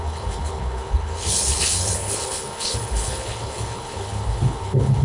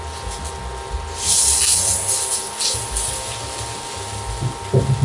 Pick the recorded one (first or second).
second